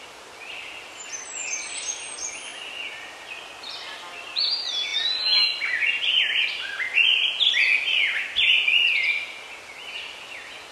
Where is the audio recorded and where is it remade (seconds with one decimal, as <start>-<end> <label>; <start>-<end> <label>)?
0.0-10.7 recorded